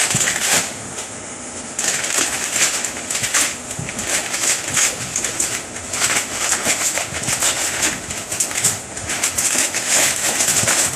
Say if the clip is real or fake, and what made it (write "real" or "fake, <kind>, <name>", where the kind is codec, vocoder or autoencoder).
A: fake, autoencoder, DAC-VAE